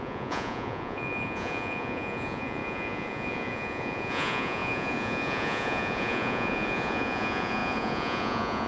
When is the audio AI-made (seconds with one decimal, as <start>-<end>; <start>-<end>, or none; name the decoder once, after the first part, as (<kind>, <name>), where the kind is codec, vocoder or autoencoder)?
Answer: 0.0-8.7 (vocoder, Vocos)